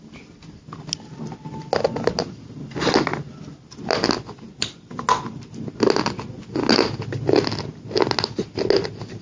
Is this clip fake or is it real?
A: real